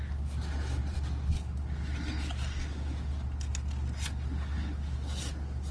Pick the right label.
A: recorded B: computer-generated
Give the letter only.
A